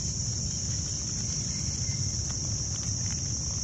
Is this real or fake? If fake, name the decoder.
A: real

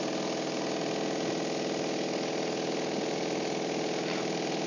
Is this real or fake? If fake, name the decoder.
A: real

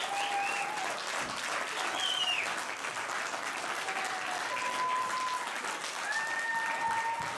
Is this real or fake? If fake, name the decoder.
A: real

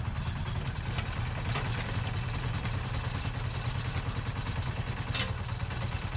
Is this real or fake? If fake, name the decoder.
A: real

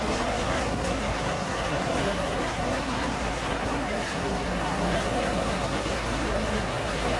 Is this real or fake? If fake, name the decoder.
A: fake, codec, SNAC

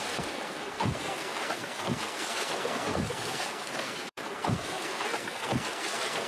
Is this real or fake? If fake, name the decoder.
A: fake, codec, SNAC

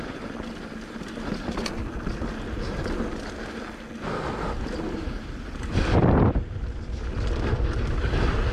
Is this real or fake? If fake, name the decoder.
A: real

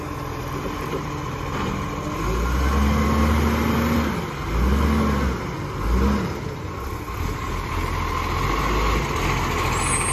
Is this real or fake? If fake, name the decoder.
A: real